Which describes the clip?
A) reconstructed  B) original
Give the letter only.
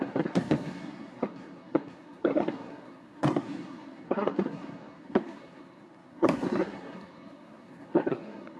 A